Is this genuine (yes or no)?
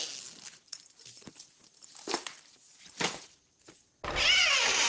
yes